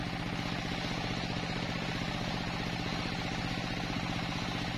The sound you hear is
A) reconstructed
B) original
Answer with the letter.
B